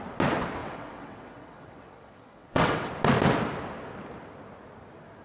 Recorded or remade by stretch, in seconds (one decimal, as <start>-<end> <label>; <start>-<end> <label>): 0.0-0.6 recorded; 0.6-2.9 remade; 2.9-5.2 recorded